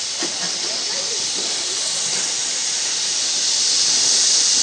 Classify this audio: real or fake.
fake